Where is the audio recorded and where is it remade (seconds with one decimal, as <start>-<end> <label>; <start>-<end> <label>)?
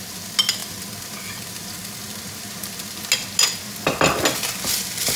0.0-5.2 recorded